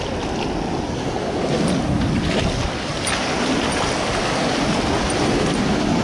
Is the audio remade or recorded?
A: recorded